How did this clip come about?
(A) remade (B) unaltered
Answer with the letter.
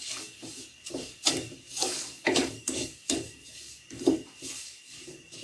A